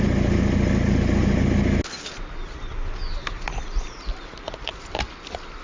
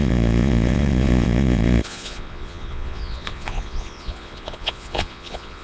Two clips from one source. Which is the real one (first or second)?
first